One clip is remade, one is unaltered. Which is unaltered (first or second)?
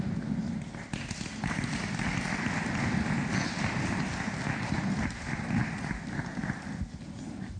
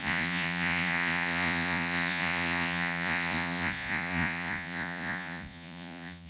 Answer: first